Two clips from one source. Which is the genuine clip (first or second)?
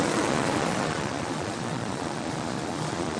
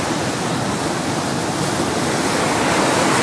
second